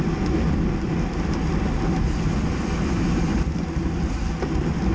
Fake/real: real